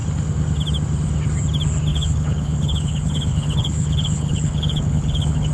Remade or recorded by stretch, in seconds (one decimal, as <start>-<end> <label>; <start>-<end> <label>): 0.0-1.9 recorded; 1.9-5.5 remade